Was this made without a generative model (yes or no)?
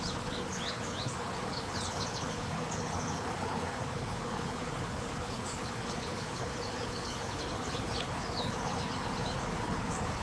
no